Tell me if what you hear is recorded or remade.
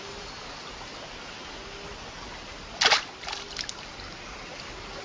recorded